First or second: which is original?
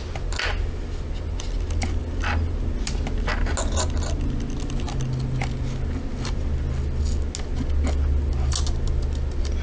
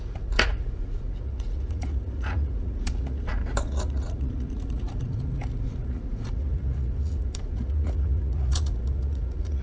first